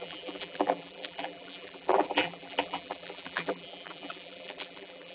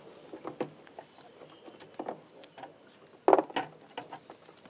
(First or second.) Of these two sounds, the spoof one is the first